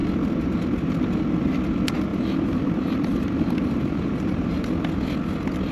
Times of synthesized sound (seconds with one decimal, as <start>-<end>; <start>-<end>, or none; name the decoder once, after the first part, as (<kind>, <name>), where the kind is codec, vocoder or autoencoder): 2.1-4.5 (vocoder, BigVGAN v2)